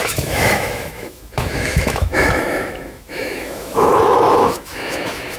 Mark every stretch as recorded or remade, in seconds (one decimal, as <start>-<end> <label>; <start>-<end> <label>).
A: 0.0-5.4 remade